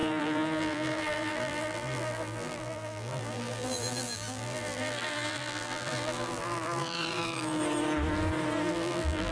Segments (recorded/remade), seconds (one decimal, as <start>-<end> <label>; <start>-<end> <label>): 0.0-7.6 remade; 7.6-8.7 recorded; 8.7-9.3 remade